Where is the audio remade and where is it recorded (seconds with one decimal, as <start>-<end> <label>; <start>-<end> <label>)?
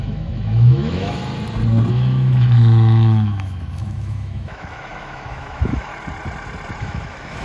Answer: 0.0-1.2 remade; 1.2-1.9 recorded; 1.9-5.9 remade; 5.9-6.8 recorded; 6.8-7.4 remade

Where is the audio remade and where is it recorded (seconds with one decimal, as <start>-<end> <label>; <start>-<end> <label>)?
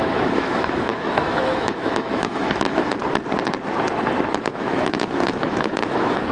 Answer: 0.0-3.0 remade; 3.0-4.4 recorded; 4.4-6.3 remade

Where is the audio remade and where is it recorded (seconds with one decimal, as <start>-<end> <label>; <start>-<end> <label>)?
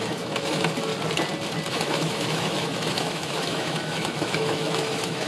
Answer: 0.0-0.9 remade; 0.9-1.7 recorded; 1.7-5.3 remade